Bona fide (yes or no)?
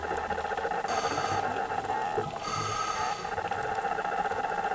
yes